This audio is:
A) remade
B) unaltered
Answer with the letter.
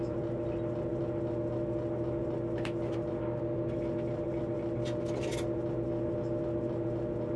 B